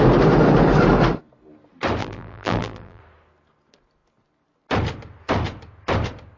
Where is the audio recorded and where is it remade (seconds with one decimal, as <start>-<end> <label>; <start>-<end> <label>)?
0.0-2.0 recorded; 2.0-3.0 remade; 3.0-6.4 recorded